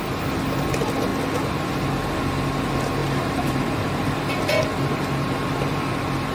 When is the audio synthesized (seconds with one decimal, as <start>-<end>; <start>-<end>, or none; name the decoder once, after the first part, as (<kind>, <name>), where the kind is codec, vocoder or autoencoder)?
3.0-4.2 (vocoder, BigVGAN v2)